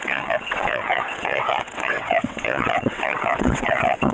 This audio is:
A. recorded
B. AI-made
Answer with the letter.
B